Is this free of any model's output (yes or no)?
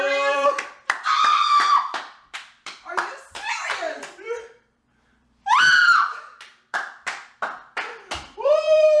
no